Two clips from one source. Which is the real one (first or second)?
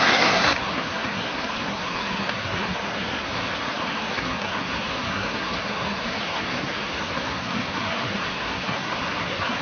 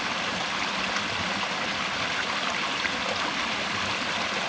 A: second